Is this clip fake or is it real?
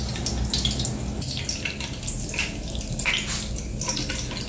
real